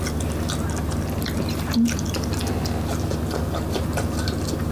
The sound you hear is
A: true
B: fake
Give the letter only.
A